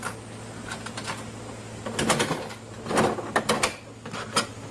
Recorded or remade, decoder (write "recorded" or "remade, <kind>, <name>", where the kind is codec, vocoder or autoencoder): recorded